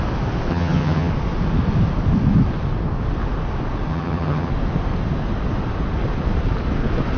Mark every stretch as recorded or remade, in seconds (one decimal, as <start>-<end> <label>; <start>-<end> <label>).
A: 0.0-0.5 recorded; 0.5-1.1 remade; 1.1-3.9 recorded; 3.9-4.5 remade; 4.5-7.2 recorded